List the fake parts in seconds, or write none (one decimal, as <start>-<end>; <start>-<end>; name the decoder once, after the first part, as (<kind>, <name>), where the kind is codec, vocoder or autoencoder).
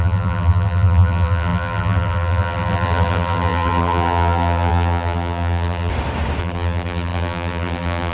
0.0-5.9 (vocoder, BigVGAN v2); 6.4-8.1